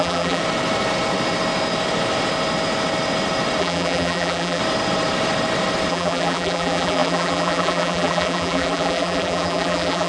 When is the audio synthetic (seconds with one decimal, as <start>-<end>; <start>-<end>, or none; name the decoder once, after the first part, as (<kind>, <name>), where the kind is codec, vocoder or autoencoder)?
0.0-0.4 (vocoder, BigVGAN v2); 3.6-4.6; 5.9-10.1